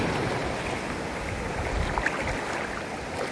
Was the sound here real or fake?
real